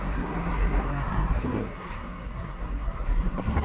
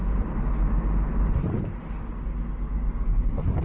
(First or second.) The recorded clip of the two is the second